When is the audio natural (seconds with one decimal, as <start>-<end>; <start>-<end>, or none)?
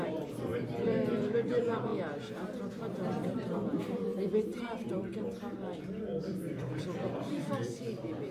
none